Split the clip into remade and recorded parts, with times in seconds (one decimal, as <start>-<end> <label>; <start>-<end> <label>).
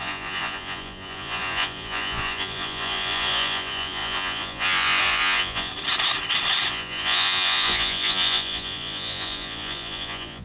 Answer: 0.0-5.7 remade; 5.7-6.7 recorded; 6.7-10.4 remade